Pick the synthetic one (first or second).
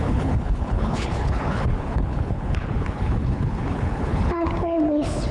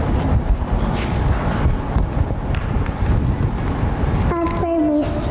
first